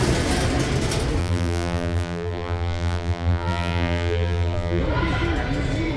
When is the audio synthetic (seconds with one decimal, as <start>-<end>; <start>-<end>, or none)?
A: 1.2-4.8